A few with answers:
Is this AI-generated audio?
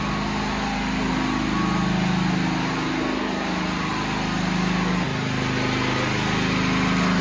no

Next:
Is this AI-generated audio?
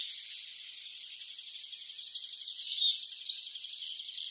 no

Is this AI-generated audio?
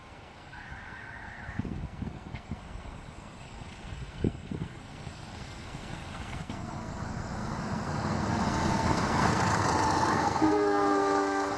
yes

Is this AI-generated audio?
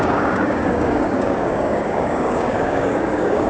yes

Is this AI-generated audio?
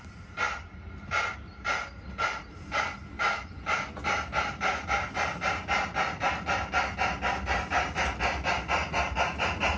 no